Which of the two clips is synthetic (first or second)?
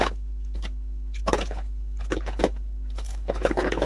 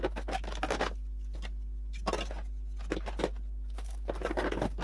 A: first